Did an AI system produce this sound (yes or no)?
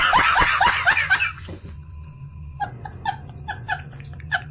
yes